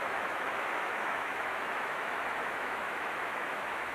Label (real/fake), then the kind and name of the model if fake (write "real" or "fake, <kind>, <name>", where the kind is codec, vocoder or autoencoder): fake, autoencoder, DAC-VAE